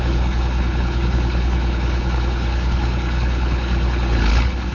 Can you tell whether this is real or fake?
fake